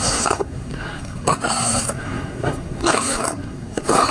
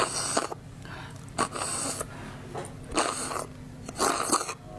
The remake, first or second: first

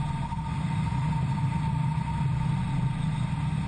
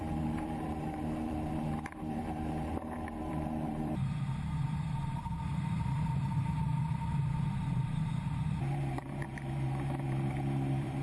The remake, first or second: second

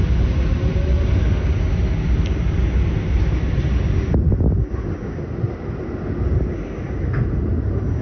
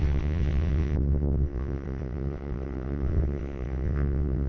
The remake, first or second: second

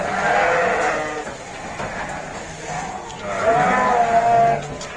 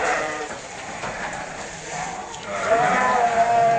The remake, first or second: second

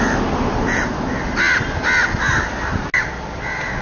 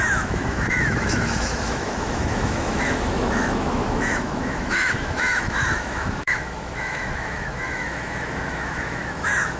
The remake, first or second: second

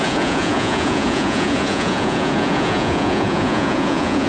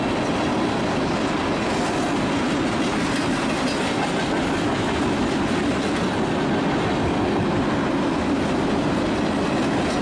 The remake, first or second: first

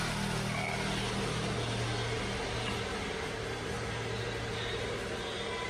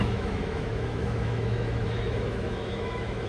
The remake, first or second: second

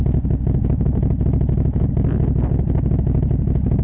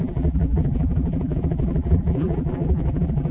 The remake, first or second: second